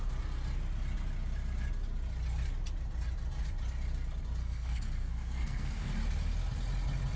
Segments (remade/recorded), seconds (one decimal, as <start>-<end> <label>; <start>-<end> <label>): 0.0-4.4 recorded; 4.4-5.9 remade; 5.9-7.2 recorded